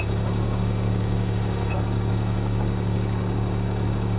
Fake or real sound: fake